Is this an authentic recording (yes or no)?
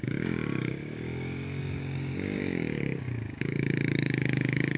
no